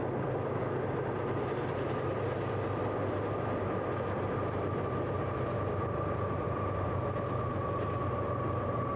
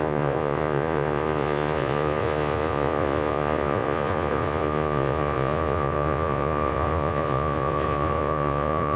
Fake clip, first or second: second